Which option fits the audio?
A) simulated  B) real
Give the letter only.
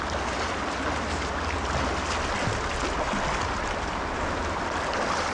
B